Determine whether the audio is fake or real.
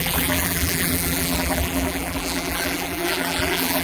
fake